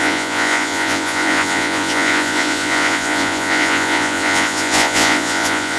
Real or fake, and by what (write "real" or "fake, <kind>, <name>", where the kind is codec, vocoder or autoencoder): fake, vocoder, Vocos